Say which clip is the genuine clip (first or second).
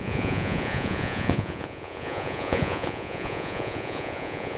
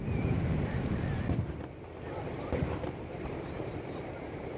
second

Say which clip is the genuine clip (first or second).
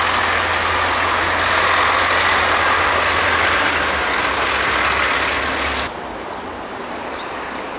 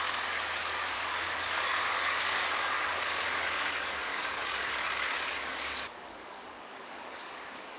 first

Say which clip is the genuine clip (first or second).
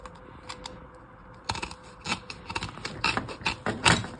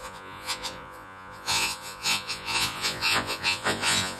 first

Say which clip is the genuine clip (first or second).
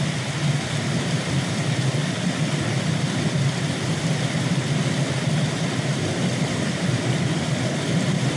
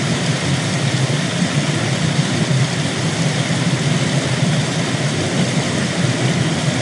second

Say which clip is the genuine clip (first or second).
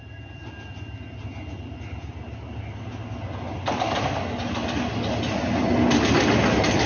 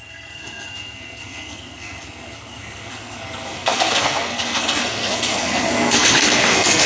first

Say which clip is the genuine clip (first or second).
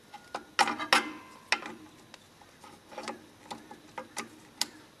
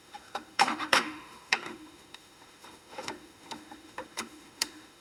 first